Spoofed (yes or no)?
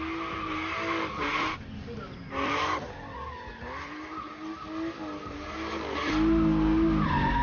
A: no